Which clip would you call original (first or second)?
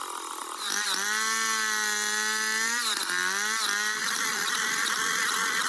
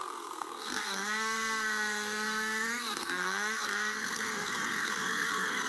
first